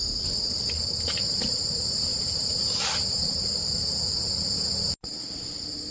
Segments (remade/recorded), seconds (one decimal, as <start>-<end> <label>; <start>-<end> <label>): 0.0-5.9 recorded